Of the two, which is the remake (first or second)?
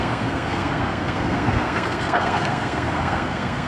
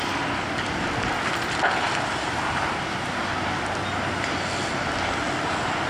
first